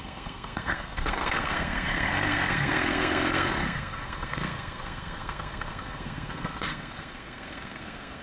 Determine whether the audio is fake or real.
fake